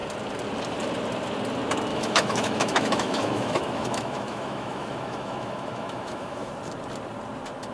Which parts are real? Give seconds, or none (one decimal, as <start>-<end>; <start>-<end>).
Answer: 0.0-1.9; 6.5-7.7